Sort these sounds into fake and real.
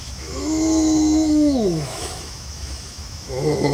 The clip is fake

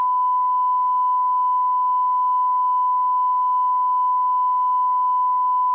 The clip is fake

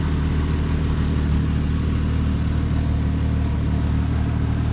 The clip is real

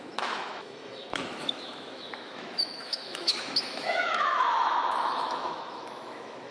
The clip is fake